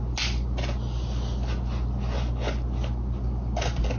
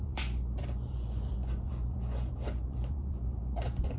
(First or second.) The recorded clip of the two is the first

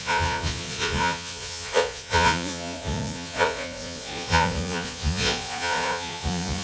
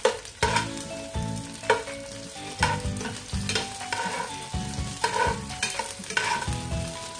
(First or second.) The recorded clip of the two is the second